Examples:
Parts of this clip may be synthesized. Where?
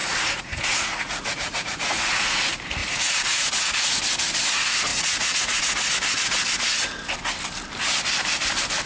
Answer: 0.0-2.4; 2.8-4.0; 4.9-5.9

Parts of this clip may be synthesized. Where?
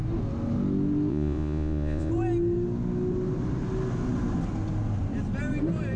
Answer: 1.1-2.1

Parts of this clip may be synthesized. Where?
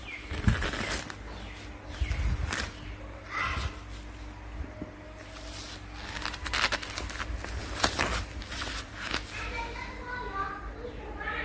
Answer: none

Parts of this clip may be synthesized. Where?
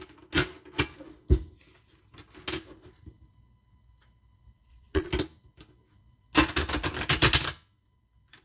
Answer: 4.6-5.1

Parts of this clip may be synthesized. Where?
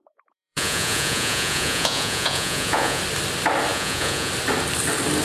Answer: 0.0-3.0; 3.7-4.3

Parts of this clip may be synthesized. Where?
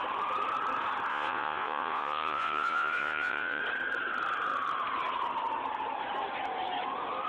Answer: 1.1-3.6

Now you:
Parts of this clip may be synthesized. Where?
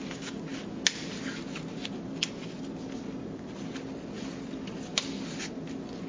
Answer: none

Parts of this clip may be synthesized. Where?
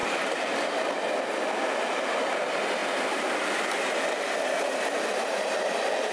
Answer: none